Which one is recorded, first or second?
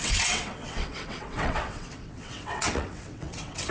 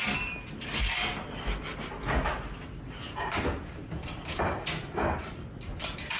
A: second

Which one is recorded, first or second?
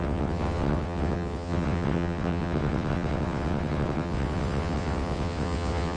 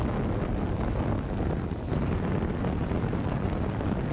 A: second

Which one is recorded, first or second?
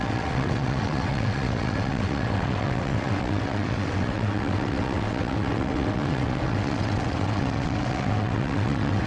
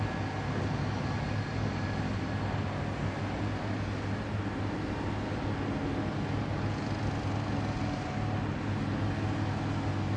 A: second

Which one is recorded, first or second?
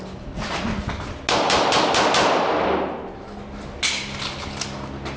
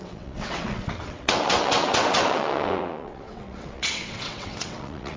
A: first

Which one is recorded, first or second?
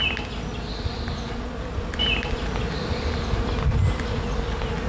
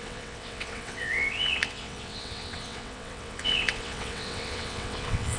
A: first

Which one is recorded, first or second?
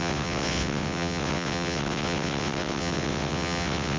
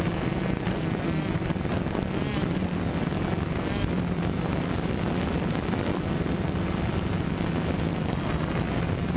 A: second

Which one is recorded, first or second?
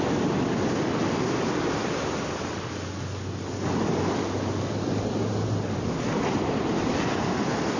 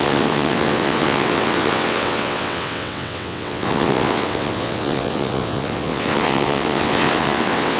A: first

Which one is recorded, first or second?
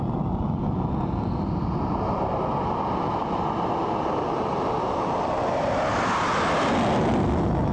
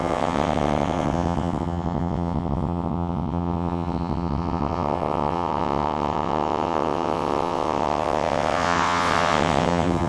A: first